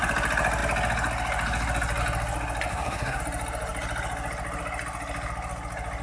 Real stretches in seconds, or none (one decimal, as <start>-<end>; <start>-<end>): 0.0-2.7; 3.2-6.0